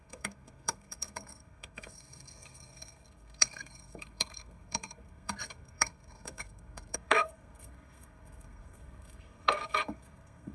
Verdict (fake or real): fake